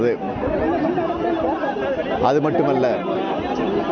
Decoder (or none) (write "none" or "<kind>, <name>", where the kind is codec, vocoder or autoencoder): none